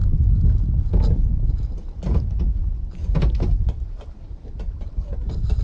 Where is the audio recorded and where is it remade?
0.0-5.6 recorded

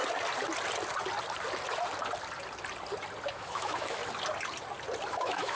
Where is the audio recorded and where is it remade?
0.0-3.3 recorded; 3.3-4.0 remade; 4.0-5.1 recorded; 5.1-5.5 remade

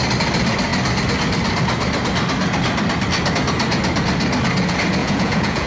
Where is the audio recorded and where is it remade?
0.0-5.0 recorded; 5.0-5.7 remade